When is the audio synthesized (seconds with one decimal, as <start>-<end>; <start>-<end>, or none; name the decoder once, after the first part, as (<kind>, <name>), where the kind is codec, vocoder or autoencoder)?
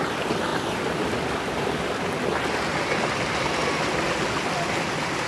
none